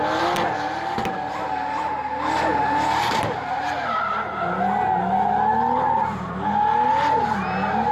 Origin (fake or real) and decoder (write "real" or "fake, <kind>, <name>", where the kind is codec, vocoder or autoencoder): real